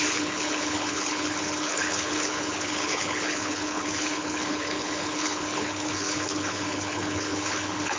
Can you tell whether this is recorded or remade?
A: remade